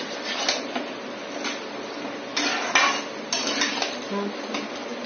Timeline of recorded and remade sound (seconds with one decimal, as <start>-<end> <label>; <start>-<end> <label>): 0.0-5.1 recorded